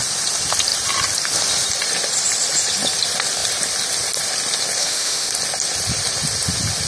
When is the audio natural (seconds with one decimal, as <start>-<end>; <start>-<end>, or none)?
0.0-4.8; 5.3-6.9